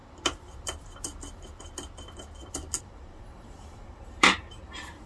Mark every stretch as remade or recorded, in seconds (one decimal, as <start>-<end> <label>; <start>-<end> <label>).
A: 0.0-2.8 recorded; 2.8-5.1 remade